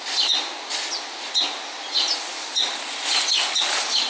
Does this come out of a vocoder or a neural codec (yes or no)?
no